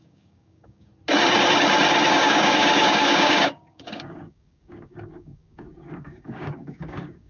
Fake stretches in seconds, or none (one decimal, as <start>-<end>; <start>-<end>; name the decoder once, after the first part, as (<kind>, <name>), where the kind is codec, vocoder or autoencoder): 0.0-0.9 (codec, DAC); 2.1-7.3